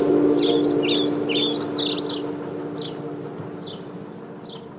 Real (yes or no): yes